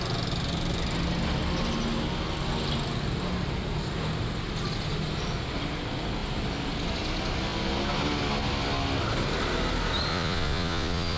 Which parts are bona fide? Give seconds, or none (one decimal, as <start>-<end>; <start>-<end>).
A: 0.0-10.1